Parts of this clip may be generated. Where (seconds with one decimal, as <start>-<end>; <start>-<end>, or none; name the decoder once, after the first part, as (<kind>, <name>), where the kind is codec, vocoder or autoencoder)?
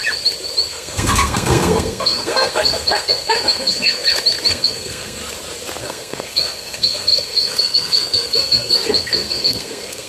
0.7-4.0 (codec, SNAC); 4.5-5.2; 5.8-10.1